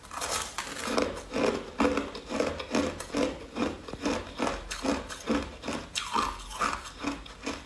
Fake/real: real